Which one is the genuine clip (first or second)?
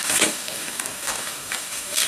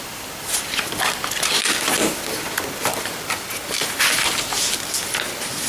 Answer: second